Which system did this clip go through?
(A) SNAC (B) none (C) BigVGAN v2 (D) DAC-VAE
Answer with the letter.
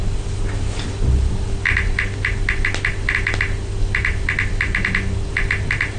B